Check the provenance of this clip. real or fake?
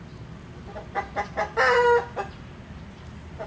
real